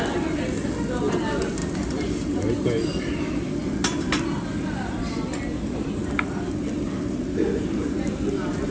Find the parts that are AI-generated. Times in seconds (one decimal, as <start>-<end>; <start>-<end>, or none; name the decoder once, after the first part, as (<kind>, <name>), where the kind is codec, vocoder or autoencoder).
none